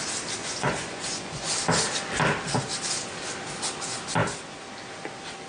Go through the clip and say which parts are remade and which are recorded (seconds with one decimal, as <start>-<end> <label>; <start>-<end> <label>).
0.0-0.4 recorded; 0.4-1.5 remade; 1.5-5.5 recorded